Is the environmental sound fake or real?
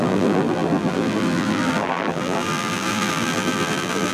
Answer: fake